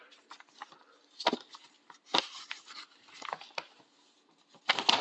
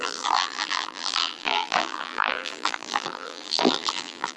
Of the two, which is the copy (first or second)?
second